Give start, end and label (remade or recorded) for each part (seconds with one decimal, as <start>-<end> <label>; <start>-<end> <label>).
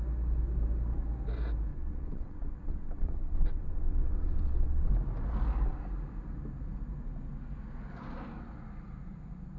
0.0-1.7 recorded; 1.7-4.9 remade; 4.9-9.6 recorded